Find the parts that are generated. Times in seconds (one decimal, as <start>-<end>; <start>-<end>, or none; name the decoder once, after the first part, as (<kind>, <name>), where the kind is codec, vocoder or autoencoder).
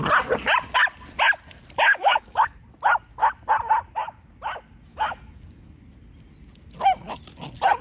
1.9-2.6 (codec, DAC); 4.9-5.7